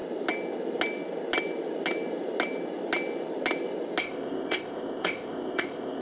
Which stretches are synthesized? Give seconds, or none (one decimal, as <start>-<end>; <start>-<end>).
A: 4.0-6.0